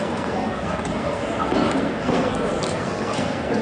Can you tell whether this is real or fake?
fake